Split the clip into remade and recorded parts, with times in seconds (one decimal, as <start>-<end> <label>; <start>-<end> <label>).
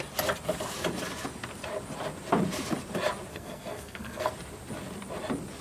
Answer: 0.0-3.3 recorded; 3.3-4.3 remade; 4.3-5.6 recorded